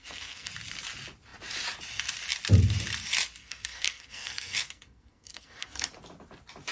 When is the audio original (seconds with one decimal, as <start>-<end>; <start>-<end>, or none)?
0.5-3.4; 5.9-6.7